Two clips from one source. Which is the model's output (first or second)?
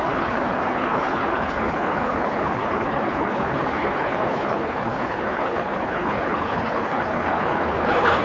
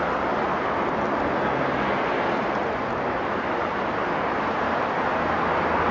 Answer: first